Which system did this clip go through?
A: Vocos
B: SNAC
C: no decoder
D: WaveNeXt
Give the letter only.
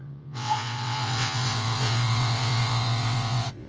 D